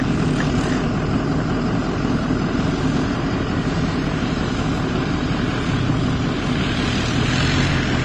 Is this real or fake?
real